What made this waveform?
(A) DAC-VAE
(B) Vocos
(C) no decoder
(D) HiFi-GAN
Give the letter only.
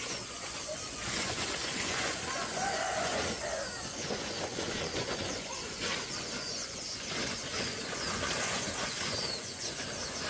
B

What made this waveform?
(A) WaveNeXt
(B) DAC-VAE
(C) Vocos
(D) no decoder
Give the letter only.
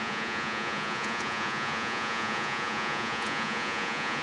C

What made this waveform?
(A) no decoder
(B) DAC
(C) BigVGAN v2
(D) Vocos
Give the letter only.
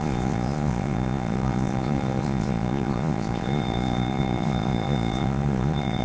D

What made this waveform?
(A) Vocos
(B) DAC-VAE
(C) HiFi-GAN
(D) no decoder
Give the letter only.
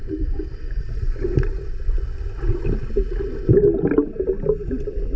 D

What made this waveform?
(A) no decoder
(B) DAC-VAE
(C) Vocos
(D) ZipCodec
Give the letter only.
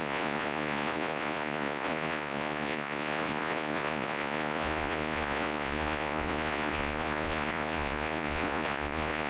C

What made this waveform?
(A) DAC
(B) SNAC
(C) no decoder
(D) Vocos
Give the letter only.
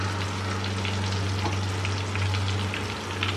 C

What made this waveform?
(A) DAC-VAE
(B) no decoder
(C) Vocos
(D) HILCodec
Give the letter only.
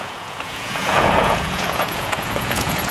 C